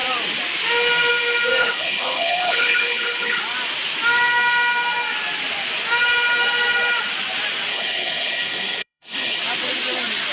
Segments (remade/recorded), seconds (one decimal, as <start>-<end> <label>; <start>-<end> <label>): 0.0-1.6 recorded; 1.6-3.4 remade; 3.4-7.7 recorded; 7.7-9.4 remade; 9.4-10.3 recorded